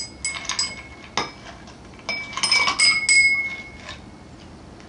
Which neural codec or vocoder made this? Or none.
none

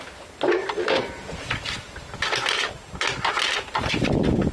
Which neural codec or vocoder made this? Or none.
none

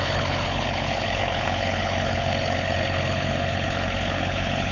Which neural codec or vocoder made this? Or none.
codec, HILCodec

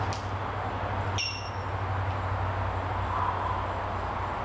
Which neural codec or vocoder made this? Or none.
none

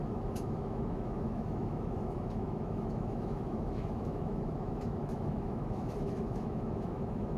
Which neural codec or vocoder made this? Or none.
autoencoder, DAC-VAE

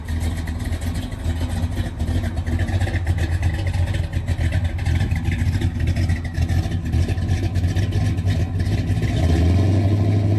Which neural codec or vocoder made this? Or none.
none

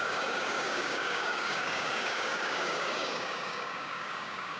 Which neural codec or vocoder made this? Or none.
codec, DAC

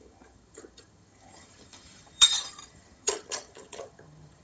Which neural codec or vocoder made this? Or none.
vocoder, HiFi-GAN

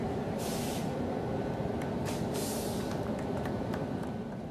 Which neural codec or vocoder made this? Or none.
vocoder, BigVGAN v2